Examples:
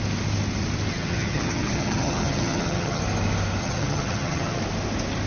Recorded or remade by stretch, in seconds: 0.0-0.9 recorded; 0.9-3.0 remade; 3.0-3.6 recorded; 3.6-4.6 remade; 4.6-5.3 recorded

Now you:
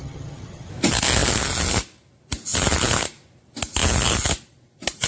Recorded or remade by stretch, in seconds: 0.0-0.7 remade; 0.7-5.1 recorded

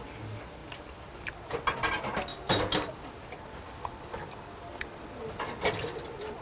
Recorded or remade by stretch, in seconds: 0.0-6.4 recorded

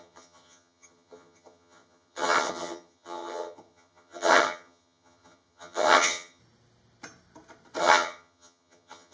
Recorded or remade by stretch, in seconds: 0.0-6.4 remade; 6.4-7.8 recorded; 7.8-9.1 remade

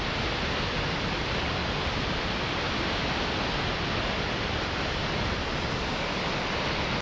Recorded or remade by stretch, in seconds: 0.0-7.0 recorded

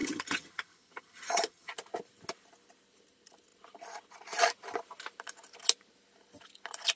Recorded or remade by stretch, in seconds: 0.0-1.7 remade; 1.7-7.0 recorded